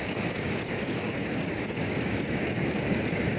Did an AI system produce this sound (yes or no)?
yes